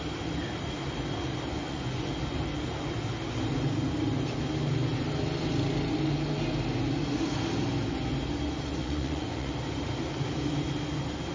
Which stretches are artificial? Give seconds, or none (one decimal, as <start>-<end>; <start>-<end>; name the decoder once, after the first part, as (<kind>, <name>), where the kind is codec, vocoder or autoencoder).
1.5-2.1 (vocoder, Vocos); 8.8-9.5